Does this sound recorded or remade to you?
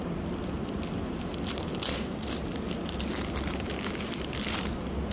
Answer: recorded